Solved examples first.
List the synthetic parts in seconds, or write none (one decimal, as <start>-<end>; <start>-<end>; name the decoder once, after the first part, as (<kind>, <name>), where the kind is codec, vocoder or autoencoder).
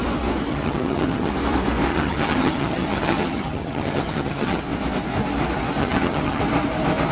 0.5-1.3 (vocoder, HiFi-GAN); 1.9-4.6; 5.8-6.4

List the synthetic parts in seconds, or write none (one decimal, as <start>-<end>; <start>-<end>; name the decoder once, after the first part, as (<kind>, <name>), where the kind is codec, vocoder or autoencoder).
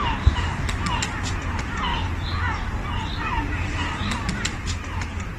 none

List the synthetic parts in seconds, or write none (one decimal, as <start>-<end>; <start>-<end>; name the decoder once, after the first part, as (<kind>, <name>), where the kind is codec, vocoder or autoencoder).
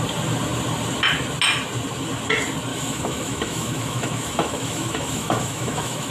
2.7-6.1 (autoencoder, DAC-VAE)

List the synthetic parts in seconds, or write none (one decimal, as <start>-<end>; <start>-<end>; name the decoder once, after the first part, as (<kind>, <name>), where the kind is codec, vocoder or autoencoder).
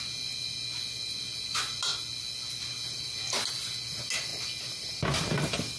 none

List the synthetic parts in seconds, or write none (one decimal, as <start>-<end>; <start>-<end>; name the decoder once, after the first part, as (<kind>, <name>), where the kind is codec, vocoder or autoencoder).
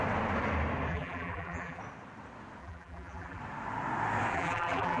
0.9-1.8 (vocoder, BigVGAN v2); 2.6-3.4; 4.3-5.0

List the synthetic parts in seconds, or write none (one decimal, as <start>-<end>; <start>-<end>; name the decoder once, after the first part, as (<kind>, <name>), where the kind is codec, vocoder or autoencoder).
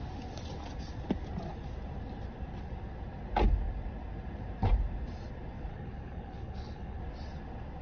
5.7-7.0 (codec, HILCodec)